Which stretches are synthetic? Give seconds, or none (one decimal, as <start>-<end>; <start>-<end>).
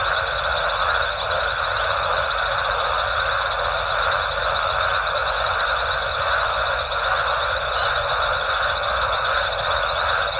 5.2-9.4